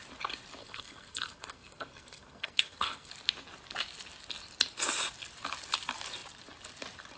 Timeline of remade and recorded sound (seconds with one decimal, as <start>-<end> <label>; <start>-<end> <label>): 0.0-0.6 recorded; 0.6-3.1 remade; 3.1-7.2 recorded